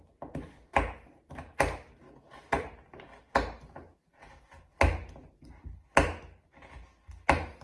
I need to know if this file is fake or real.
real